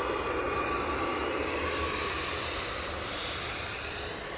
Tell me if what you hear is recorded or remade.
recorded